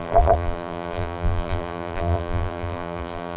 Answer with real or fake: fake